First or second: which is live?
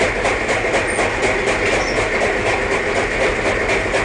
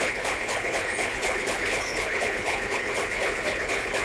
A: first